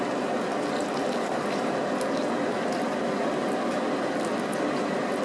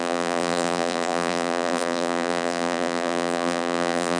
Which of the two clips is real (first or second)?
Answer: first